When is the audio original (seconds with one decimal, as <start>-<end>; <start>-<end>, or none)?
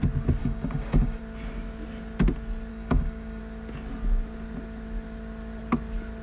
0.0-0.4; 1.2-2.7; 3.4-6.2